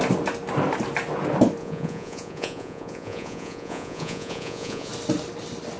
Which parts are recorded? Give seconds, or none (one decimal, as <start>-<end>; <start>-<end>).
0.0-1.6; 4.9-5.8